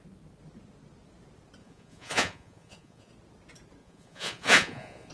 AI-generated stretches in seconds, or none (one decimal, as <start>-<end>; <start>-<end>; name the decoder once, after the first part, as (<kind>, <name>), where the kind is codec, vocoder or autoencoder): 1.6-3.1 (vocoder, Vocos); 3.8-5.1